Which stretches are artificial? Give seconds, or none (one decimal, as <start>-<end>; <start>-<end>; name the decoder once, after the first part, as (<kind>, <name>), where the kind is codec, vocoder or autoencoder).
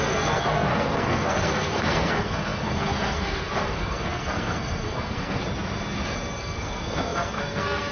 0.0-5.4 (codec, SNAC); 6.4-7.9